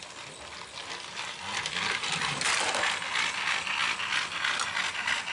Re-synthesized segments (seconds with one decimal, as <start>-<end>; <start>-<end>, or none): none

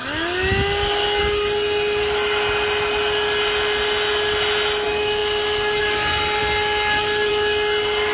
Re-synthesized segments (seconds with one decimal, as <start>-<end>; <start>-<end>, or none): none

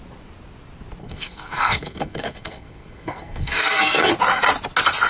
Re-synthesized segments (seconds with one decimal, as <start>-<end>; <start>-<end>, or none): 1.0-4.1

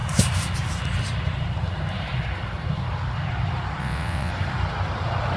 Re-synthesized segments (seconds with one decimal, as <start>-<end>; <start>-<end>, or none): 3.8-4.3

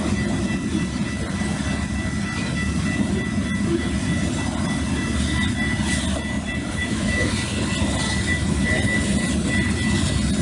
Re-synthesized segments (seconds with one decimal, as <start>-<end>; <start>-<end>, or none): 6.8-7.3

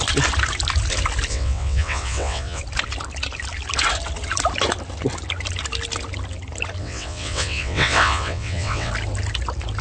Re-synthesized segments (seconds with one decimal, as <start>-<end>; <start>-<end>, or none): 1.3-2.6; 6.8-8.9

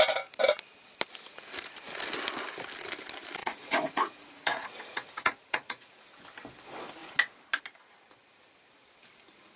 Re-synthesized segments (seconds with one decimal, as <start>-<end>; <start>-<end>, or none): 3.4-6.2

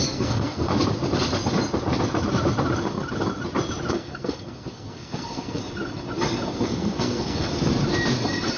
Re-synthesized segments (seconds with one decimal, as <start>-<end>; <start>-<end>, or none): 0.0-0.7; 3.9-5.6; 6.5-7.7